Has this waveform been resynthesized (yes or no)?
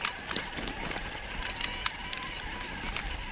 no